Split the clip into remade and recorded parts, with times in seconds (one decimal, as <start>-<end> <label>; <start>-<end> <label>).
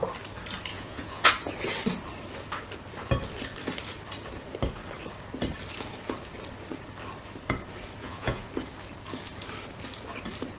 0.0-0.7 recorded; 0.7-1.3 remade; 1.3-8.0 recorded; 8.0-8.5 remade; 8.5-10.6 recorded